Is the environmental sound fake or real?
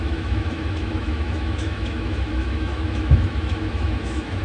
fake